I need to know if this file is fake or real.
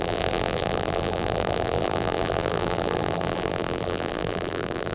fake